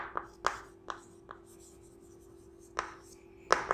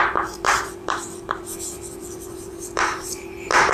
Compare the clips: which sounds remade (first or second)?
second